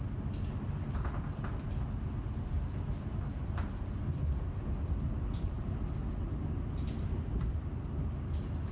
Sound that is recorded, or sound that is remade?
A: recorded